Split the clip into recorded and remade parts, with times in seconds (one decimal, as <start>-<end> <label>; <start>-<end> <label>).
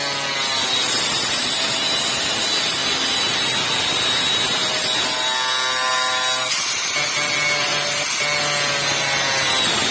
0.0-9.9 recorded